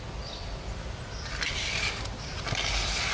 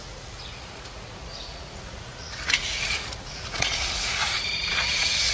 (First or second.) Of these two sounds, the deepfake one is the second